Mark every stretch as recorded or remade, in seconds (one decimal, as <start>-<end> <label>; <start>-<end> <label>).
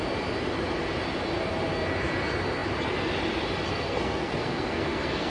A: 0.0-3.7 recorded; 3.7-5.3 remade